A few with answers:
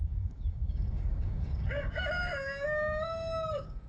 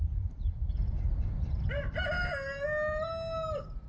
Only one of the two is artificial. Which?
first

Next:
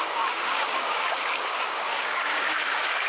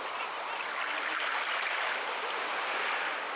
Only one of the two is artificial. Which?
first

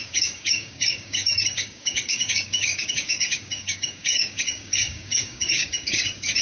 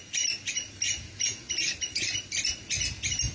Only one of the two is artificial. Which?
first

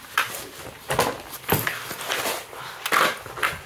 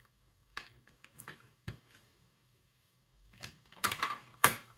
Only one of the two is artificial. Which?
second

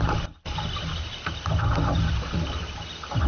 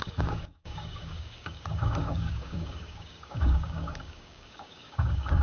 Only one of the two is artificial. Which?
second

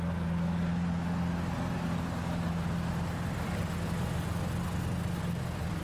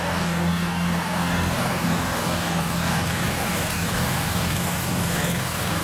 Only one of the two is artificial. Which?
second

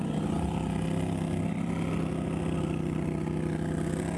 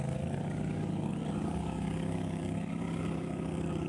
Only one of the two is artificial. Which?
second